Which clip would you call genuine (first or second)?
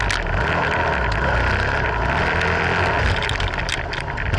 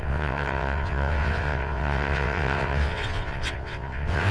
first